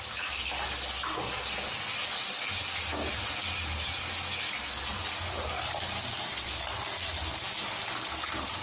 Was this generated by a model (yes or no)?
no